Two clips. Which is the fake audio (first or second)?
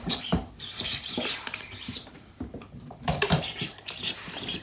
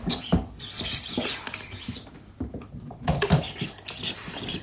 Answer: first